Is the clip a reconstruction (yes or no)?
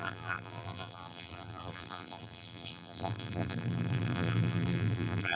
yes